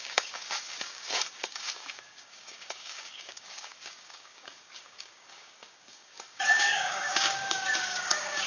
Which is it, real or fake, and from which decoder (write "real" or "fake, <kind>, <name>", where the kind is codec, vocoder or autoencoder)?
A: fake, codec, DAC